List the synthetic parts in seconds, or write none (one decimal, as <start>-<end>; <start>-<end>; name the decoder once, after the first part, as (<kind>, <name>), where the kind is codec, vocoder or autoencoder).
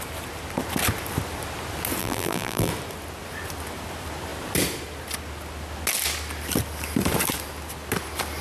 2.0-2.7 (vocoder, BigVGAN v2)